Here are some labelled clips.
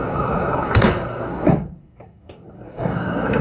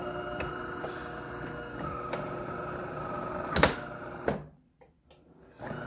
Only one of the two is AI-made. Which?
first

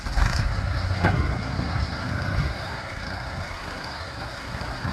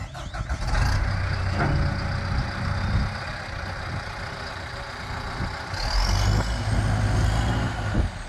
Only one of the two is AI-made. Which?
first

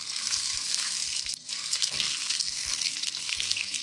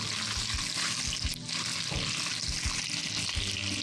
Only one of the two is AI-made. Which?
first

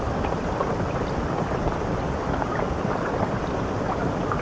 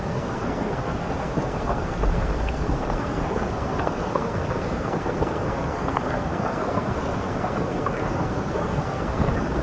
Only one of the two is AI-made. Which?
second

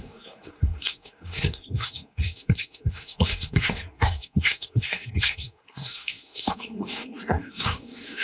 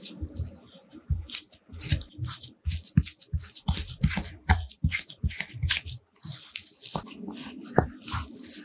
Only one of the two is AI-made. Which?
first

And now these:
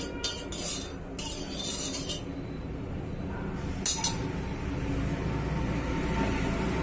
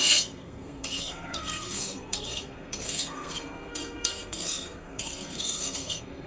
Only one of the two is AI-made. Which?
second